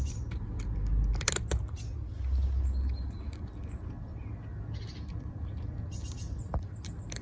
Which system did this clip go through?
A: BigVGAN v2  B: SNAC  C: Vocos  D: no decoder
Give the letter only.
D